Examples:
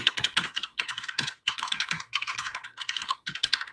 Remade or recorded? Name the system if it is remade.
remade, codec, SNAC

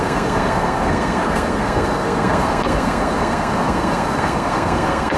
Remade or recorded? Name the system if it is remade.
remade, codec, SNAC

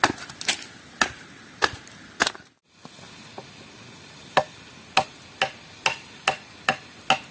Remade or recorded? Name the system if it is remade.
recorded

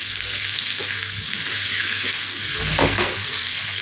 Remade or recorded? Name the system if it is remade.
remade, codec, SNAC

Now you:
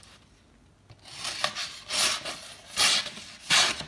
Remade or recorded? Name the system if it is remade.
recorded